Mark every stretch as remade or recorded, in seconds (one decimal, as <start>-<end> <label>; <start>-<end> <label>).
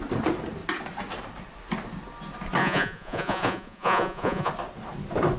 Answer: 0.0-2.6 recorded; 2.6-4.5 remade; 4.5-5.4 recorded